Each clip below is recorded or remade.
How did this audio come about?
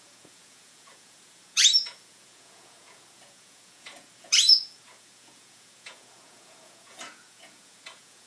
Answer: remade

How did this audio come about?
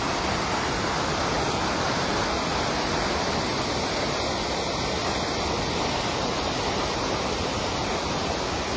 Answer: recorded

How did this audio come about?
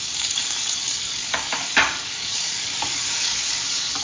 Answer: remade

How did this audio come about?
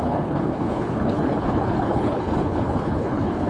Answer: remade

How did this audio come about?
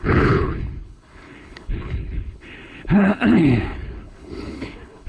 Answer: remade